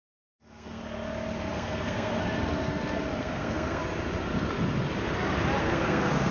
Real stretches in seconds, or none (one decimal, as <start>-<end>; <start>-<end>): 0.8-1.5; 2.2-3.2; 3.8-5.6

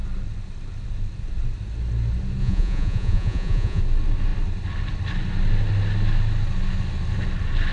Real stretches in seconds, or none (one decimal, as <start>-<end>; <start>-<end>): 0.0-2.4; 3.8-7.7

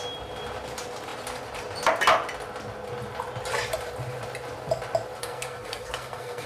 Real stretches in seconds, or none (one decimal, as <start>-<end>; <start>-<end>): 0.0-5.2